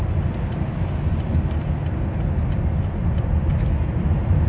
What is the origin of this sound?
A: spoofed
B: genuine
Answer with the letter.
B